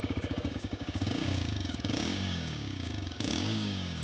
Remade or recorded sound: remade